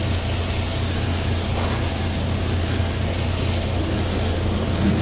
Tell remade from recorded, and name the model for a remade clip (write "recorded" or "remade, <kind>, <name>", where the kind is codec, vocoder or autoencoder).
recorded